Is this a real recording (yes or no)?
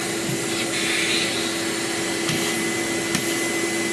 yes